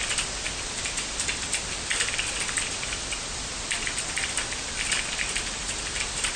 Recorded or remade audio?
recorded